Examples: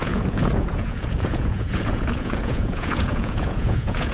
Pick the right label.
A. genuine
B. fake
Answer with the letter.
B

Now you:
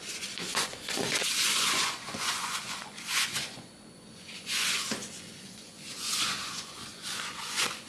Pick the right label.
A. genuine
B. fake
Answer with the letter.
B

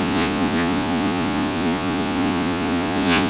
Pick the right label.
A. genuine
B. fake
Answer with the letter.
B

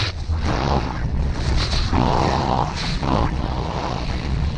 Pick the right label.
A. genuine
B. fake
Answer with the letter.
B